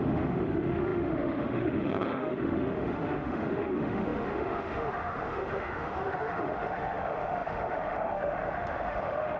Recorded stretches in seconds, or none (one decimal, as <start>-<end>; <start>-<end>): none